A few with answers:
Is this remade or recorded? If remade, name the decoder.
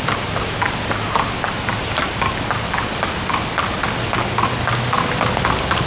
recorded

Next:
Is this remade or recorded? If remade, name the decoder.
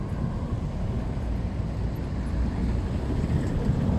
recorded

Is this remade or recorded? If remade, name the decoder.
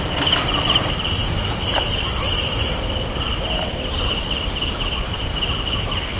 recorded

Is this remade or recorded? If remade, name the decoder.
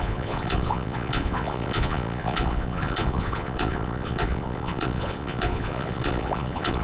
remade, vocoder, Vocos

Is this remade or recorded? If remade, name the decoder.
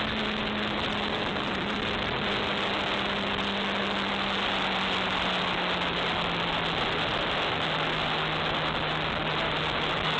recorded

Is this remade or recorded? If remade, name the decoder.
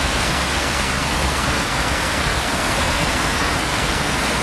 remade, codec, SNAC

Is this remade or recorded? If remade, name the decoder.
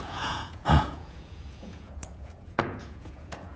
remade, vocoder, Vocos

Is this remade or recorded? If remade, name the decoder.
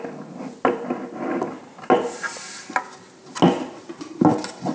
recorded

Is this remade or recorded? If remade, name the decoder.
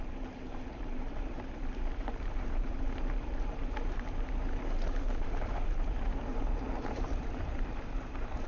remade, vocoder, BigVGAN v2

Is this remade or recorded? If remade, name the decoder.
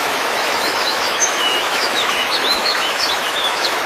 remade, autoencoder, DAC-VAE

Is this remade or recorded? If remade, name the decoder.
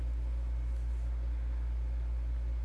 recorded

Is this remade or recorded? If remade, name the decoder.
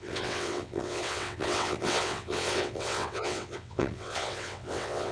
remade, vocoder, WaveNeXt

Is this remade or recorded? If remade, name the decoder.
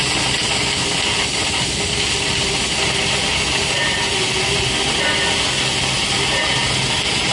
recorded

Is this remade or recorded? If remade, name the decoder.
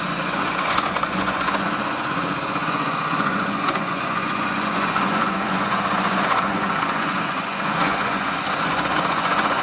remade, vocoder, Vocos